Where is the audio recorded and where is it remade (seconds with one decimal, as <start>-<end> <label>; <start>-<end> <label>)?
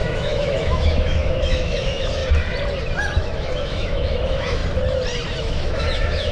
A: 0.0-2.2 remade; 2.2-3.2 recorded; 3.2-4.6 remade; 4.6-5.4 recorded; 5.4-6.3 remade